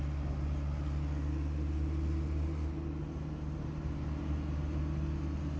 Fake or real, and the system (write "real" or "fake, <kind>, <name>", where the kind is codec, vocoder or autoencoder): real